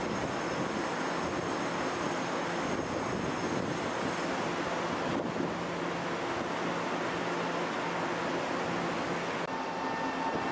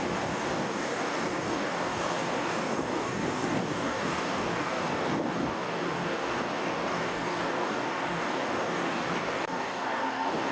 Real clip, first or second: first